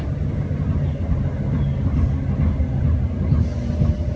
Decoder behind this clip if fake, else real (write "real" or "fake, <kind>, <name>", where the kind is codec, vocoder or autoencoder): real